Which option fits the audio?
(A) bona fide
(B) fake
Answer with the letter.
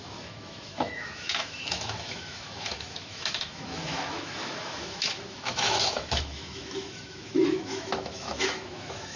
B